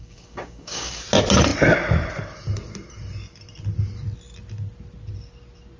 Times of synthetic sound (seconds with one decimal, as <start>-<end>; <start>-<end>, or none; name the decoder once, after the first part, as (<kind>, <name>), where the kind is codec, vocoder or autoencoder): 0.0-1.0 (codec, DAC)